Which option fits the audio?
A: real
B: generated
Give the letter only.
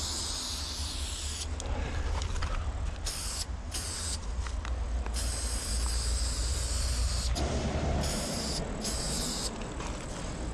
A